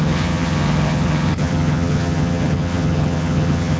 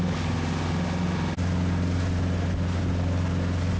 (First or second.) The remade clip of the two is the first